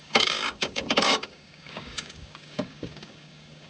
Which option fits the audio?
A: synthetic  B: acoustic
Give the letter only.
A